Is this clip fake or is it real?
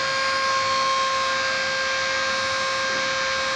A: real